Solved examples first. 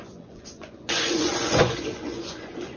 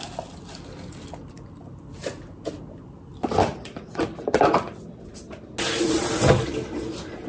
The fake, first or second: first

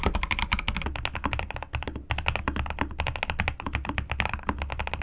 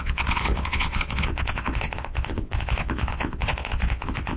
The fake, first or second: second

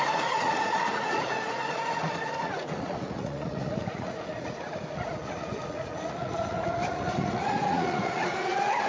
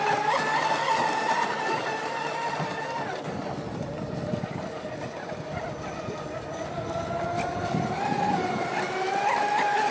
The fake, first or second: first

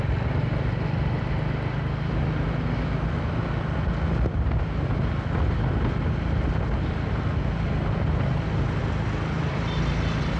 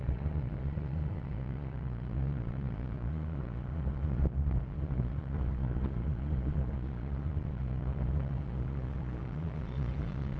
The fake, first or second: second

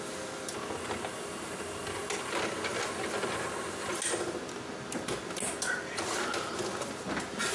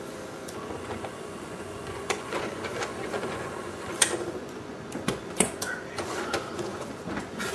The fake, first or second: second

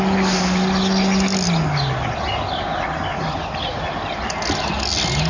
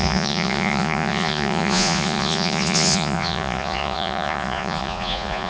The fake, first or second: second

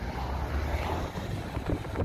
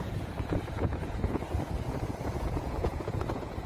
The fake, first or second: second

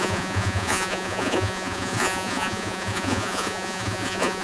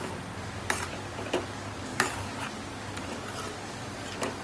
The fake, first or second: first